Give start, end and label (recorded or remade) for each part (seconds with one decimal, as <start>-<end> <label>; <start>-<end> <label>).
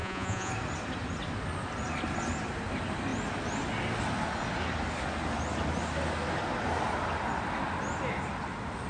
0.0-0.5 remade; 0.5-8.9 recorded